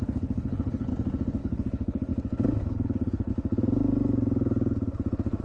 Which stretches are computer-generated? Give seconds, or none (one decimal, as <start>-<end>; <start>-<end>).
0.0-0.9; 1.4-2.1; 2.6-3.3